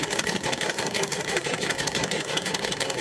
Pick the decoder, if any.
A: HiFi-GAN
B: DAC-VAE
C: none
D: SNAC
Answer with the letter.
D